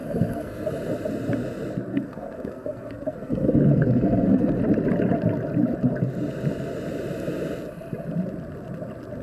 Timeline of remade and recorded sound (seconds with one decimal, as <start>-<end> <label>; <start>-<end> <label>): 0.0-0.7 remade; 0.7-1.9 recorded; 1.9-4.6 remade; 4.6-9.2 recorded